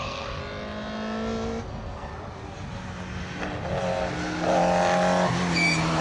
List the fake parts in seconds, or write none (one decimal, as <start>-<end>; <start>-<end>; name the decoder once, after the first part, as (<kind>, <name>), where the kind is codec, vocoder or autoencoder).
0.0-0.4 (codec, SNAC); 1.6-2.1